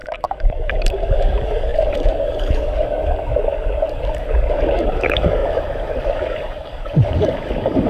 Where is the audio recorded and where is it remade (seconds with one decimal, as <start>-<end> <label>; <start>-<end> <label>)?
0.0-7.9 remade